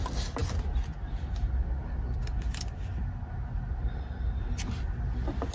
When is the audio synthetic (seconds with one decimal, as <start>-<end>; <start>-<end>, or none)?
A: none